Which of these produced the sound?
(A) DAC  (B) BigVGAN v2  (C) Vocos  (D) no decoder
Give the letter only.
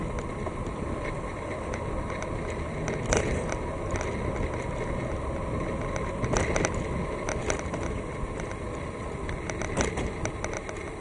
D